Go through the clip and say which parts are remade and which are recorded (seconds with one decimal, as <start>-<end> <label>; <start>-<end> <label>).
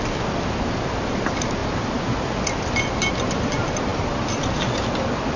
0.0-5.4 recorded